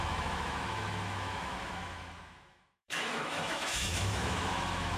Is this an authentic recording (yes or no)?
no